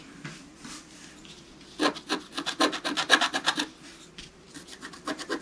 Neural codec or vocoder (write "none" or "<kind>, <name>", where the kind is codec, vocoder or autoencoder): none